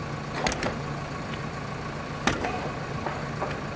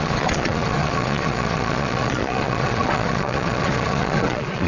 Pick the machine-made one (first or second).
second